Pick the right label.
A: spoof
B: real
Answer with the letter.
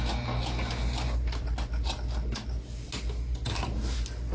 B